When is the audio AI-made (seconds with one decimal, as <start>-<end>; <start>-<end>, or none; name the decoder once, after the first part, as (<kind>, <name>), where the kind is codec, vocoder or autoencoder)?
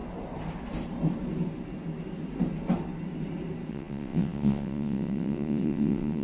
3.7-6.2 (vocoder, WaveNeXt)